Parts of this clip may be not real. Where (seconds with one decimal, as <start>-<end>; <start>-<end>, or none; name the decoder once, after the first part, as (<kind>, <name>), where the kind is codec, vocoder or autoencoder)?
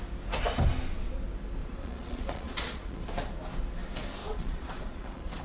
1.6-3.0 (vocoder, Vocos); 4.2-5.4